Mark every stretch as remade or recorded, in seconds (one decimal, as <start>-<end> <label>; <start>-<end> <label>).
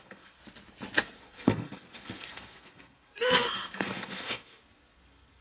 0.0-0.4 remade; 0.4-1.0 recorded; 1.0-5.4 remade